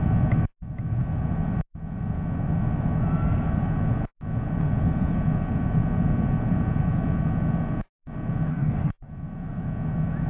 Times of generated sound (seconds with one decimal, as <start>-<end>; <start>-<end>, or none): 8.5-9.1